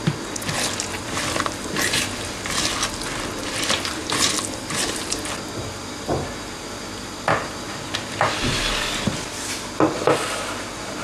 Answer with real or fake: real